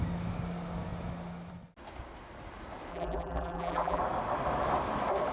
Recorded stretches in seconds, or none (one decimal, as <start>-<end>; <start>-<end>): 0.0-2.9; 4.0-5.3